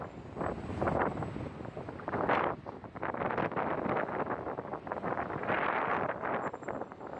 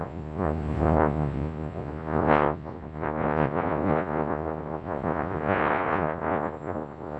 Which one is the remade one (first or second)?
second